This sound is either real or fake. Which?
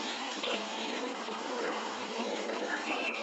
fake